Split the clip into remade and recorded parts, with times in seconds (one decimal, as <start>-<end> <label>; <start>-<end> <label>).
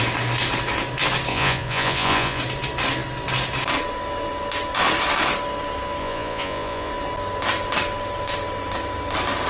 0.0-1.3 recorded; 1.3-2.4 remade; 2.4-6.0 recorded; 6.0-6.9 remade; 6.9-9.5 recorded